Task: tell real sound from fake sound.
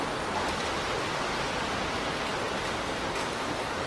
real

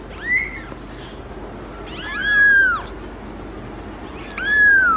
real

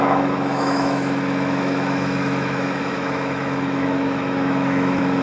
fake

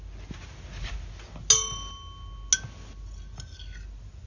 real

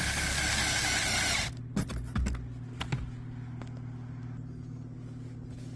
real